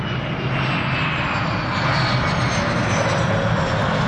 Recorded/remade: recorded